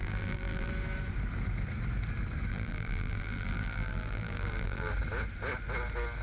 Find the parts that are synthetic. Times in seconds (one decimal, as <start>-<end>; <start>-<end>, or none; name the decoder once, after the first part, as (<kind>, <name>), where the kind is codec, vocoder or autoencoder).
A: 0.0-0.7 (vocoder, BigVGAN v2); 2.5-4.9